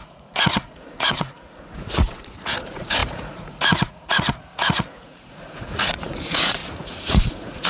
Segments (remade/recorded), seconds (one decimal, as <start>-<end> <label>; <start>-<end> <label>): 0.0-7.7 remade